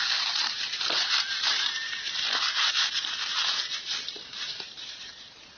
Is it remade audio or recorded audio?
remade